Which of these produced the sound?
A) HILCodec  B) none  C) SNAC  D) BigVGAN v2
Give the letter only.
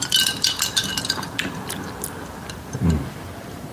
B